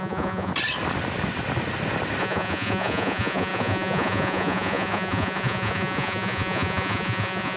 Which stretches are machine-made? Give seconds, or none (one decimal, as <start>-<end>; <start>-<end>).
0.0-0.5; 2.2-7.6